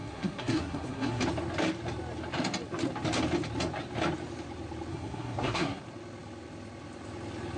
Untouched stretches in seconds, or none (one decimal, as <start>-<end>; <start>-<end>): 1.2-4.9; 5.8-7.6